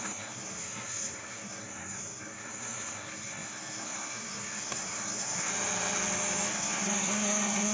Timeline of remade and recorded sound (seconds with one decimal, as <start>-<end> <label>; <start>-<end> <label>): 0.0-5.5 remade; 5.5-6.5 recorded; 6.5-7.7 remade